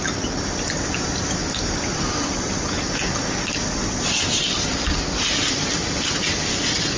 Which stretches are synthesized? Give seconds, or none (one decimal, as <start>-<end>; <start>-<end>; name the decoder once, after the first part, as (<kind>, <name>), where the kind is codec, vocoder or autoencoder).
none